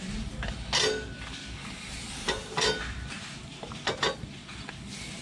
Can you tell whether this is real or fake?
real